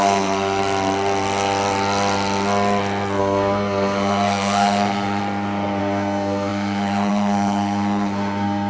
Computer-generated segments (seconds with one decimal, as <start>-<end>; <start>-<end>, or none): 0.0-0.6; 3.2-5.2; 5.8-8.7